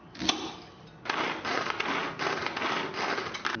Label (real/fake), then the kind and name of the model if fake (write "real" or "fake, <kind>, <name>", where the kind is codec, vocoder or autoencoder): real